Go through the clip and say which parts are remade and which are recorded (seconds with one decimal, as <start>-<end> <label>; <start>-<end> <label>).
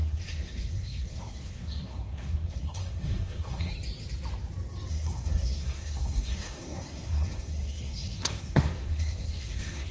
0.0-3.7 remade; 3.7-4.9 recorded; 4.9-9.9 remade